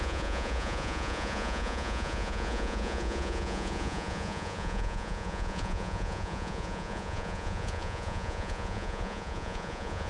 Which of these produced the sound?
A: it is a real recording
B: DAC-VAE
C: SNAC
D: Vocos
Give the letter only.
D